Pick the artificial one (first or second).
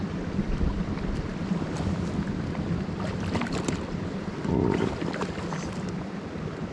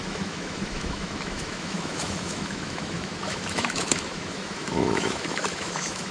second